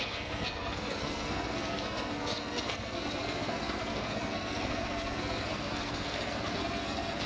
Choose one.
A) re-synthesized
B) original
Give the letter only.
A